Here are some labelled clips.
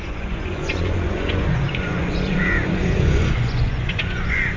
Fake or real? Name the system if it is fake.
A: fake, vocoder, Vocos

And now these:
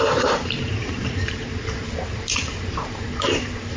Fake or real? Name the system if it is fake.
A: fake, vocoder, BigVGAN v2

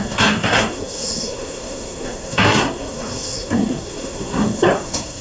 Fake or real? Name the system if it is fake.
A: fake, codec, SNAC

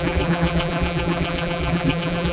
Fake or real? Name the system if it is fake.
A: fake, vocoder, BigVGAN v2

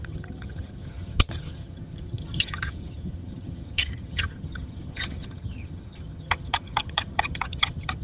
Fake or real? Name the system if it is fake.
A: fake, vocoder, HiFi-GAN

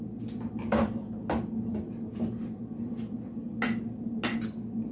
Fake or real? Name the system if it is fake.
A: real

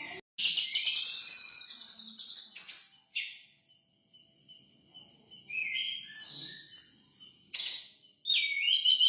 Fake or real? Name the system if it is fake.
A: real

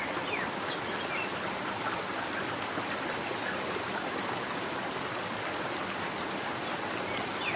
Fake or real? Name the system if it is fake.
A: real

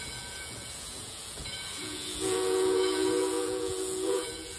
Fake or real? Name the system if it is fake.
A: fake, vocoder, Vocos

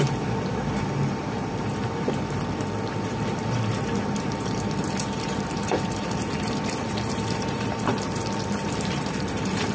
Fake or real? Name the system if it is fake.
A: fake, vocoder, BigVGAN v2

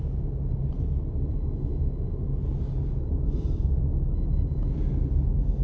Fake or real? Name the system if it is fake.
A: real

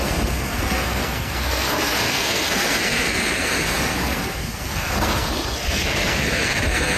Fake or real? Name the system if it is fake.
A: fake, codec, SNAC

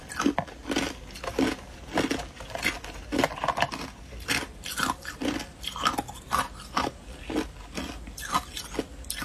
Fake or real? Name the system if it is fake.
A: real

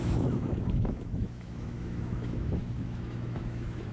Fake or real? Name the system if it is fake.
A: fake, autoencoder, DAC-VAE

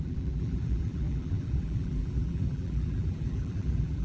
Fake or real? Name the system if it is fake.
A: fake, vocoder, BigVGAN v2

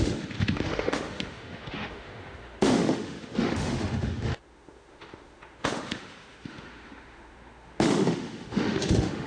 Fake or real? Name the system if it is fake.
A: fake, autoencoder, DAC-VAE